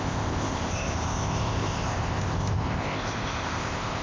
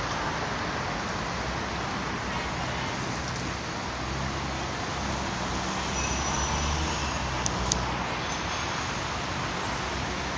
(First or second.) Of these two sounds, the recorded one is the second